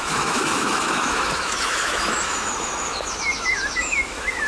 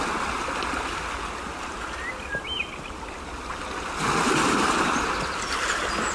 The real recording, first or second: second